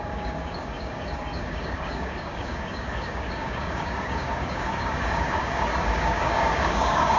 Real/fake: fake